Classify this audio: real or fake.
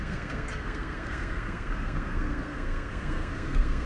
fake